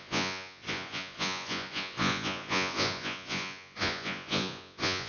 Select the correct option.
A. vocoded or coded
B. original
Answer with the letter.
A